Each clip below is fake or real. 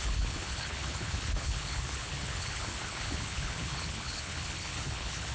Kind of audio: fake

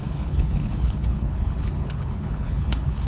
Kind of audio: fake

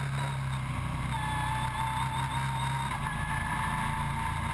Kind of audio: real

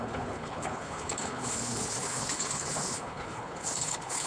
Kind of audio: fake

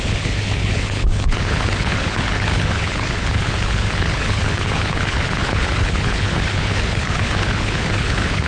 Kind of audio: fake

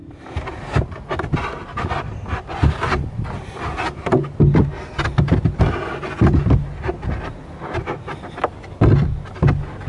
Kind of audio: real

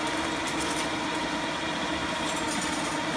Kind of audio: real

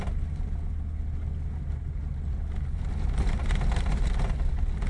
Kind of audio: real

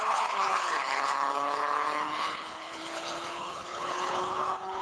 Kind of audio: fake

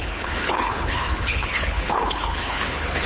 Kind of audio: fake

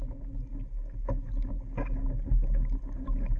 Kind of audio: real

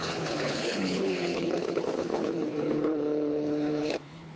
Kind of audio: fake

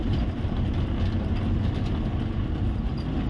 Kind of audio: real